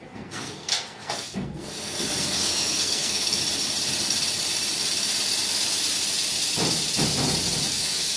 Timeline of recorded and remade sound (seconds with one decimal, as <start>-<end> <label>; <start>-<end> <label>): 0.0-3.4 remade; 3.4-7.7 recorded; 7.7-8.2 remade